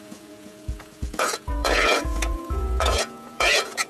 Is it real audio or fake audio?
fake